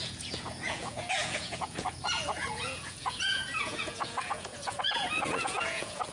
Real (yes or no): no